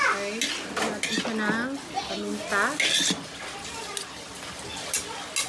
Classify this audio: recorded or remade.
recorded